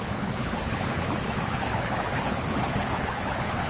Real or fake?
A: fake